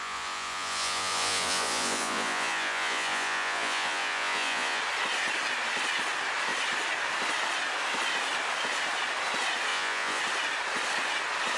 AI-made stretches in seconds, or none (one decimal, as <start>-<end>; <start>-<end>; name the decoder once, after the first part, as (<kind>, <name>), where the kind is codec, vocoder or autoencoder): 0.0-4.8 (vocoder, Vocos); 9.7-10.2